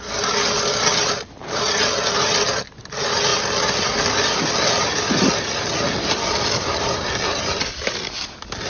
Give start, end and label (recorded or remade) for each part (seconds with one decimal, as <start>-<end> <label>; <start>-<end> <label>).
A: 0.0-8.7 recorded

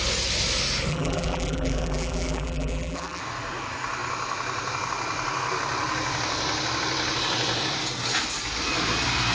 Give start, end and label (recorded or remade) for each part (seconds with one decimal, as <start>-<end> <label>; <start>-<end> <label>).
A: 0.0-0.9 recorded; 0.9-3.2 remade; 3.2-9.3 recorded